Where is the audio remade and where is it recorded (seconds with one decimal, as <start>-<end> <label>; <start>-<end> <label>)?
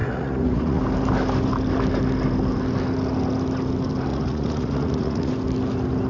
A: 0.0-0.8 remade; 0.8-4.1 recorded; 4.1-5.3 remade; 5.3-6.1 recorded